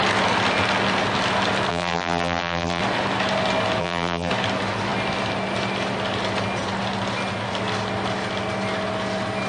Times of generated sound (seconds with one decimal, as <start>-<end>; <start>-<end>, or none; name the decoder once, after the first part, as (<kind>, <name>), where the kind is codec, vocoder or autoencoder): 1.7-2.8 (vocoder, BigVGAN v2); 3.8-4.3